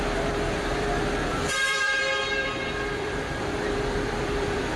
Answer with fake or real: fake